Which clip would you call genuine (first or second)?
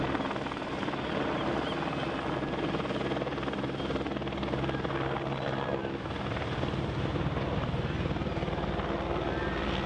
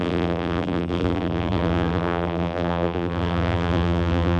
first